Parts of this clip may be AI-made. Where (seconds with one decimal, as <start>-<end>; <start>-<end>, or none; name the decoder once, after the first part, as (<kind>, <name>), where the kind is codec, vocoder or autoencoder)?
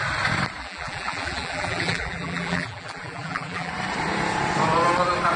0.6-3.7 (vocoder, BigVGAN v2)